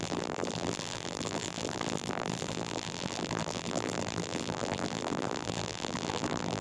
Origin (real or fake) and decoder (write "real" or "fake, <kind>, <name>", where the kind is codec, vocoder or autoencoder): fake, vocoder, BigVGAN v2